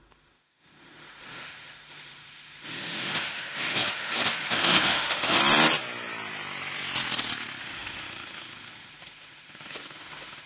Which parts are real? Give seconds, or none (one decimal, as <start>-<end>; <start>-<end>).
5.4-7.6